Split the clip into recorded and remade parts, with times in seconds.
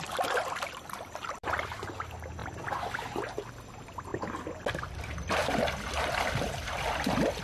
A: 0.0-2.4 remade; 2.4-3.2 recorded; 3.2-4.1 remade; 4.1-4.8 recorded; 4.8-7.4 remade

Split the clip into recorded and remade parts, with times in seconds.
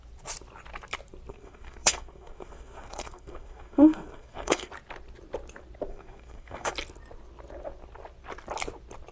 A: 0.0-1.3 recorded; 1.3-4.7 remade; 4.7-5.9 recorded; 5.9-6.7 remade; 6.7-9.1 recorded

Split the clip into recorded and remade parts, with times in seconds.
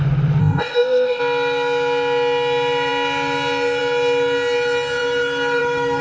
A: 0.0-0.4 recorded; 0.4-1.2 remade; 1.2-6.0 recorded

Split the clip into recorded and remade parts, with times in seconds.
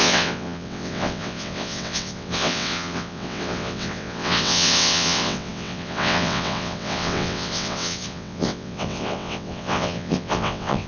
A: 0.0-10.9 remade